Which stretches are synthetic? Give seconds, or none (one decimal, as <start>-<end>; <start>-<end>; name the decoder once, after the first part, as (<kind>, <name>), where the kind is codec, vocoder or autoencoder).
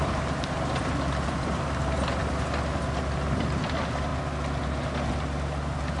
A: none